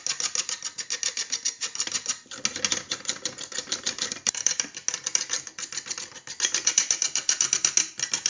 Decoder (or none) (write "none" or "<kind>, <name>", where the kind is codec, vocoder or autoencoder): none